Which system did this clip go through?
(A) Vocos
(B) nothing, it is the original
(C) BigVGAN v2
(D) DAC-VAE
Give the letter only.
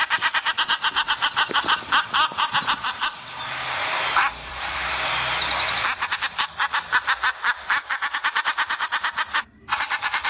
C